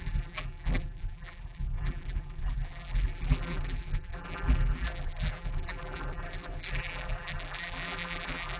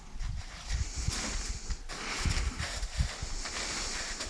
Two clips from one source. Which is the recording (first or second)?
second